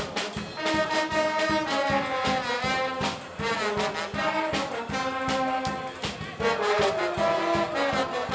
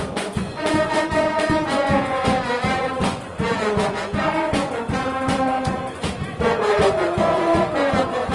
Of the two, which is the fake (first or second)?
second